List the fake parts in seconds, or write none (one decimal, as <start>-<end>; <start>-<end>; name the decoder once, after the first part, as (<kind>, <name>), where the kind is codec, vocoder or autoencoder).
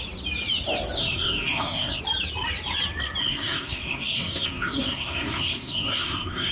1.0-2.0 (codec, SNAC); 3.2-6.5